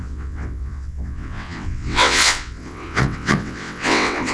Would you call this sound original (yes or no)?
no